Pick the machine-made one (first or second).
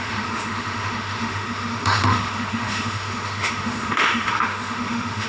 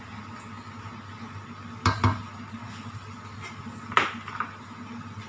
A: first